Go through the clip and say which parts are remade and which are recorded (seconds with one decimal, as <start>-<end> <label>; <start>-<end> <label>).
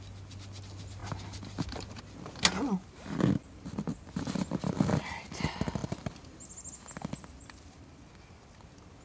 0.0-9.0 recorded